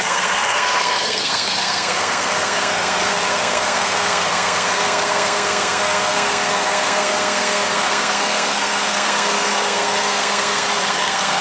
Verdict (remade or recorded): remade